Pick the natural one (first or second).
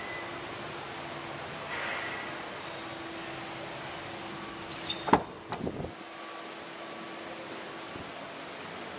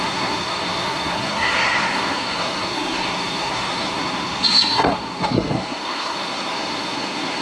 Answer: first